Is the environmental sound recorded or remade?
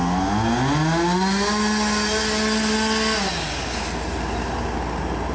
recorded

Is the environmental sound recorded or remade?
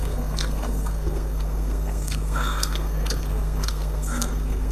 remade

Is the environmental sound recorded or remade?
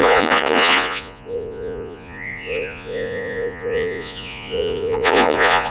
remade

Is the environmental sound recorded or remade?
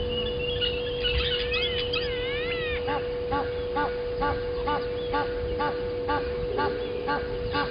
recorded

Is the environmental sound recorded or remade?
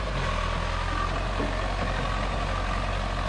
recorded